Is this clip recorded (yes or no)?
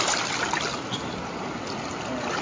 yes